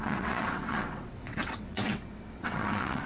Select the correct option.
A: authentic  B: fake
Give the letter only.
B